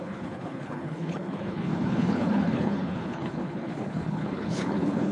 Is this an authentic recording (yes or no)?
no